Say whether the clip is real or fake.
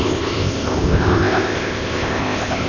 fake